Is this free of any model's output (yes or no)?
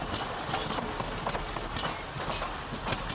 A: yes